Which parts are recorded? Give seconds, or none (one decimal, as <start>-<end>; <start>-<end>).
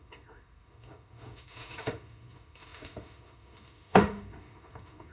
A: none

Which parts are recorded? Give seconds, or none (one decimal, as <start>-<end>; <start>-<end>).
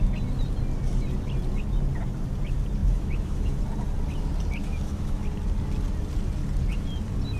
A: 0.0-2.8; 3.6-4.6; 5.2-7.4